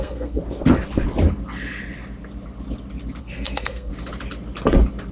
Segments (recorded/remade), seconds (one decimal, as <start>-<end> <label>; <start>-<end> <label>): 0.0-0.4 remade; 0.4-3.2 recorded; 3.2-3.9 remade; 3.9-5.1 recorded